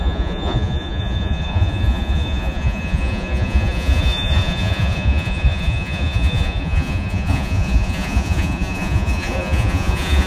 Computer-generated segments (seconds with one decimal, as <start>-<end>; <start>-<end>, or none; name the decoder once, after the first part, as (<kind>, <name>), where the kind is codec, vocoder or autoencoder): 0.0-10.3 (vocoder, Vocos)